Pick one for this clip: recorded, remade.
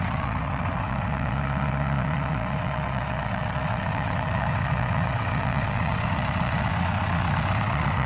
remade